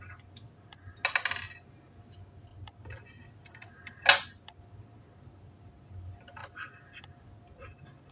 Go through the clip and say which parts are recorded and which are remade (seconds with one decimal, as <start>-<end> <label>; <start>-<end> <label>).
0.0-8.1 recorded